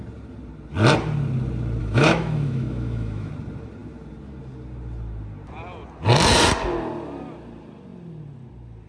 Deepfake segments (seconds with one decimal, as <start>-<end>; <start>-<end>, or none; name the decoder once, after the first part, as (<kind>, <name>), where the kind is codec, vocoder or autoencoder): 1.8-3.3 (autoencoder, DAC-VAE)